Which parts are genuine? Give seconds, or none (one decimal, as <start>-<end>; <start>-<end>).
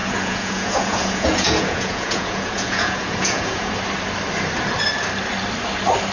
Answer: 3.7-6.1